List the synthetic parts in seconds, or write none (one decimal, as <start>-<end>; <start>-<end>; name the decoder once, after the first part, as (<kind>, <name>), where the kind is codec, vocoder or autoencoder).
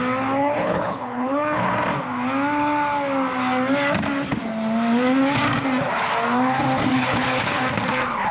0.4-1.7 (codec, HILCodec); 6.9-7.6